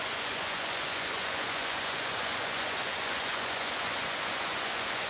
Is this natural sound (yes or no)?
no